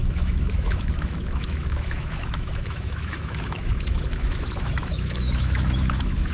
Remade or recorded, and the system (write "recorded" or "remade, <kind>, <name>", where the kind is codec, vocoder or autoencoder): remade, autoencoder, DAC-VAE